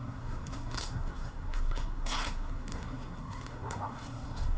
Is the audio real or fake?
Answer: fake